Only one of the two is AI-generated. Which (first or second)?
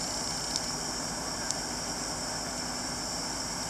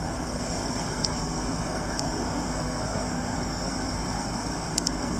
second